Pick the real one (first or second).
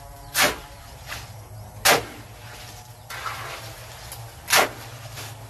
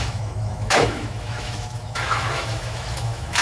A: first